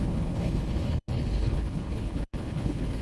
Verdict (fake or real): fake